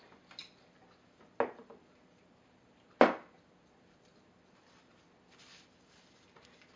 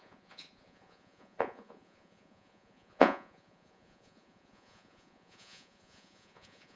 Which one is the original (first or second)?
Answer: first